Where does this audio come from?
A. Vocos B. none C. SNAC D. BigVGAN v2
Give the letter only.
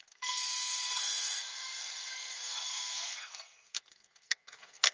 C